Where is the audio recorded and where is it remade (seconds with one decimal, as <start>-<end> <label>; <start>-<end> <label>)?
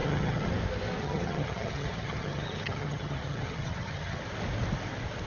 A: 0.0-0.5 remade; 0.5-1.0 recorded; 1.0-4.2 remade; 4.2-5.3 recorded